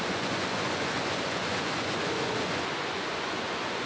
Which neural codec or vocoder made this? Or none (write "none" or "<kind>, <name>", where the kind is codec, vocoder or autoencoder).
vocoder, Vocos